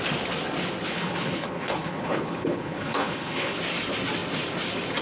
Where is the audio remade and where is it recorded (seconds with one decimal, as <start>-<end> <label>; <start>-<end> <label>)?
0.0-0.9 recorded; 0.9-3.6 remade; 3.6-5.0 recorded